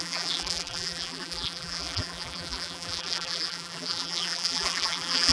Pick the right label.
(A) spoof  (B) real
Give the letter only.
A